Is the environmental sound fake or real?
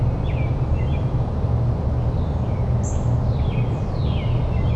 real